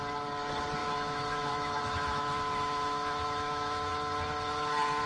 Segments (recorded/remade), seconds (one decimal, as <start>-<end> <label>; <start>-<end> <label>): 0.0-0.8 recorded; 0.8-3.9 remade; 3.9-5.1 recorded